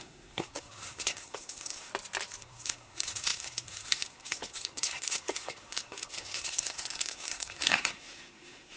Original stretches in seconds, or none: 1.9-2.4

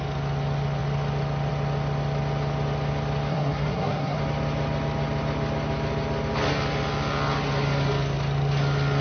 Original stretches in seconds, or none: 0.0-3.3; 4.2-9.0

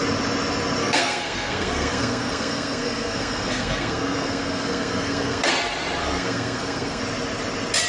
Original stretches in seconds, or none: 0.0-0.8; 5.5-6.0; 7.0-7.9

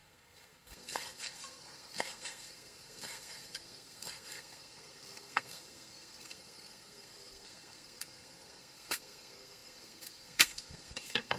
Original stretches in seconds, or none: none